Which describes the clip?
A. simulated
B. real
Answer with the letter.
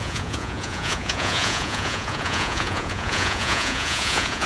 A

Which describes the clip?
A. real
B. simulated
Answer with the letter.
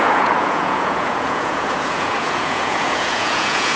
B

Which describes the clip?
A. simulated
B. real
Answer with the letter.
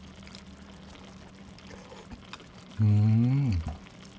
B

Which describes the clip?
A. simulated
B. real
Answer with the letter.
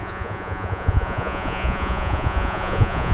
A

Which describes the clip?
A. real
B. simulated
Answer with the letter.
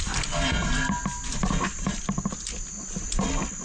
A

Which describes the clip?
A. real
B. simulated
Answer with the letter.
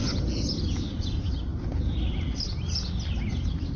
A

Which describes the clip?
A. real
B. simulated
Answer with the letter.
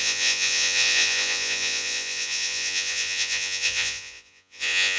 B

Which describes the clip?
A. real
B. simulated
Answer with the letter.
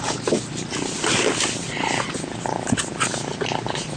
A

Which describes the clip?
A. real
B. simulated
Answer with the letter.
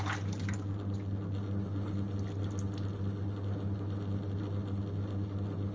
A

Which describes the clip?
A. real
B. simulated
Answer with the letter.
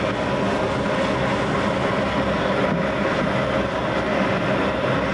A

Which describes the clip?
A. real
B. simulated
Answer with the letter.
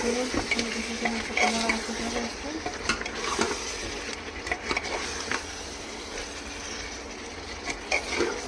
A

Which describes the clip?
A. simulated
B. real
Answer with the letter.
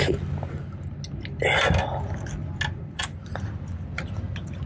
B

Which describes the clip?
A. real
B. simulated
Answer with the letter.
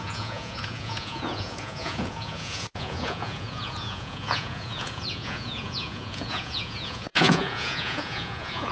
B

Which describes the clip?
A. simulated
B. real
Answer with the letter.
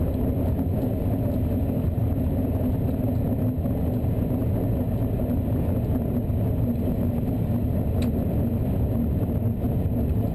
B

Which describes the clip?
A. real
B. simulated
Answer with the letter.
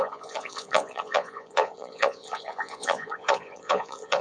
B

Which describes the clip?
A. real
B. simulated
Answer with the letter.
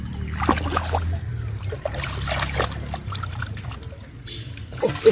A